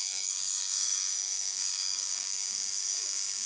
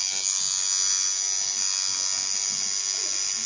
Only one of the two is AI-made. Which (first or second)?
first